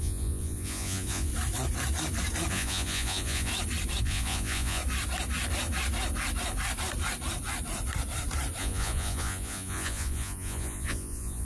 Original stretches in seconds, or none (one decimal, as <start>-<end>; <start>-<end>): 1.3-2.5; 3.5-4.0; 4.8-8.6